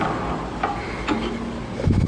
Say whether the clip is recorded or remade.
recorded